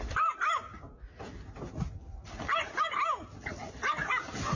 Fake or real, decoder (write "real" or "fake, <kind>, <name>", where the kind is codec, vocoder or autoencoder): real